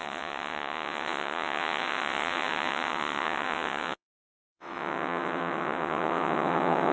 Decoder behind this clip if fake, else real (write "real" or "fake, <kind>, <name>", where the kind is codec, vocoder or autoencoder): fake, vocoder, WaveNeXt